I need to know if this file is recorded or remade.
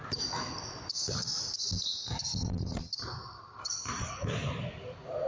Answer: recorded